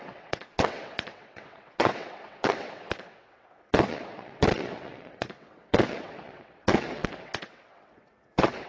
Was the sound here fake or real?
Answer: fake